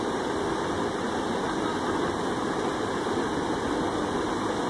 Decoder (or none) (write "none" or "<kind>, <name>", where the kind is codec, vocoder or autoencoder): none